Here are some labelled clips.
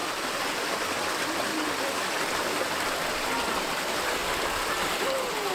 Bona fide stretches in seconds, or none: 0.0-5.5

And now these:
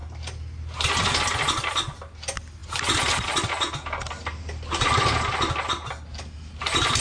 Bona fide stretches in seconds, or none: 0.0-7.0

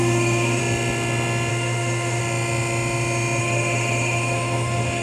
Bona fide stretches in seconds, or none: 0.6-1.5; 2.2-3.4

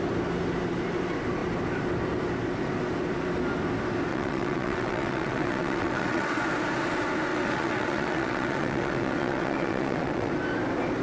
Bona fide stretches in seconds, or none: 0.0-4.1; 6.4-7.3; 10.3-11.0

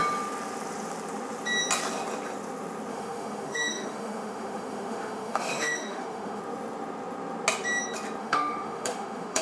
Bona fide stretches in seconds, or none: 0.0-2.9; 6.4-8.2

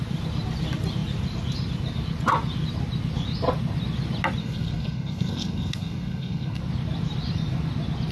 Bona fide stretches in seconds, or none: 0.0-4.4; 6.6-8.1